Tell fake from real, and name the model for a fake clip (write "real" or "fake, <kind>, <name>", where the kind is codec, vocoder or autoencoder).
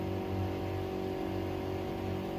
real